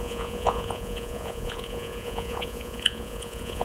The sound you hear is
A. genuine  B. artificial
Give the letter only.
B